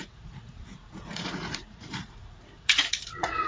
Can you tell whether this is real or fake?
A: fake